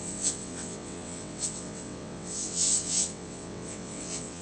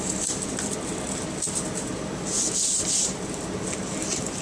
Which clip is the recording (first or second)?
second